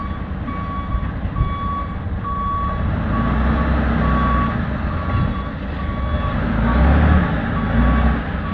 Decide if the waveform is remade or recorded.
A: recorded